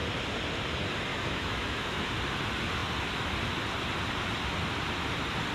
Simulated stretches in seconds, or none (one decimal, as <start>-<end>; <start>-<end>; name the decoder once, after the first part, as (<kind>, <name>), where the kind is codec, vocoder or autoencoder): 1.1-2.1 (autoencoder, DAC-VAE)